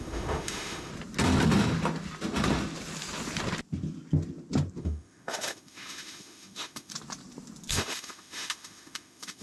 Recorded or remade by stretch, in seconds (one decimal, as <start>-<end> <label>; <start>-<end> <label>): 0.0-0.9 remade; 0.9-4.8 recorded; 4.8-6.9 remade; 6.9-7.7 recorded; 7.7-9.4 remade